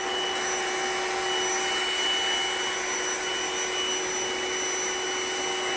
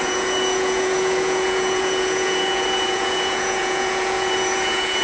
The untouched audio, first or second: first